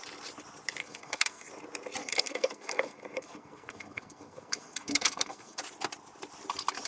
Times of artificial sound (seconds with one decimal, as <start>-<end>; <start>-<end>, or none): 0.8-1.5; 2.0-5.6